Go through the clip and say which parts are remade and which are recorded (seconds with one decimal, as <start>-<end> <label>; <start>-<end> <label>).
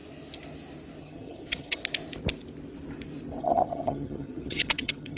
0.0-1.0 recorded; 1.0-1.8 remade; 1.8-3.4 recorded; 3.4-5.2 remade